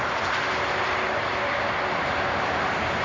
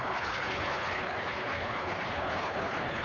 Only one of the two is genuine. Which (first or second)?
first